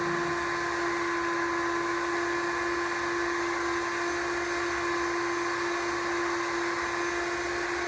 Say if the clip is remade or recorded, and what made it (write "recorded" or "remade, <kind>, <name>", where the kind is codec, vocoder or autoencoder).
recorded